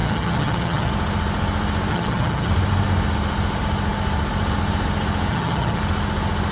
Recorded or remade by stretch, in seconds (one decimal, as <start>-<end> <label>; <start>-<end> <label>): 0.0-0.9 remade; 0.9-1.9 recorded; 1.9-2.5 remade; 2.5-5.3 recorded; 5.3-5.8 remade; 5.8-6.5 recorded